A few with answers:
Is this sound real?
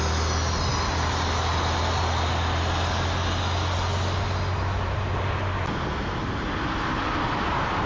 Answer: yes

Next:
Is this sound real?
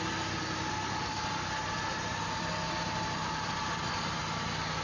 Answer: yes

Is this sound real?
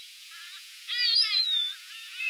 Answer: no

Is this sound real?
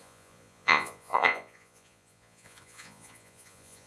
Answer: no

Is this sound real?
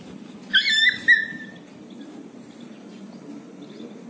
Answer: yes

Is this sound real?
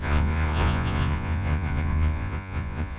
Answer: no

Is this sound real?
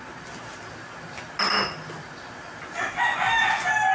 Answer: yes